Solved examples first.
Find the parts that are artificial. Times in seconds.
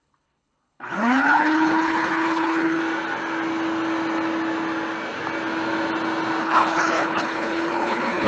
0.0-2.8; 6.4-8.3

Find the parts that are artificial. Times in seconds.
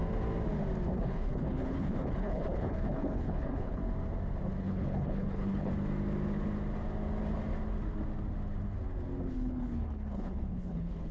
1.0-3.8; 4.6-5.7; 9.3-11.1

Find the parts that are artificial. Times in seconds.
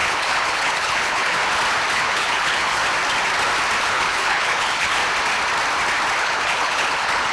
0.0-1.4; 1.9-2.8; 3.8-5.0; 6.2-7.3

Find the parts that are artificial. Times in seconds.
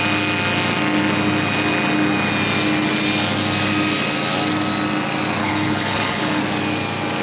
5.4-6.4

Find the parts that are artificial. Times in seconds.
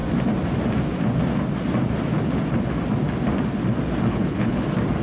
4.1-4.6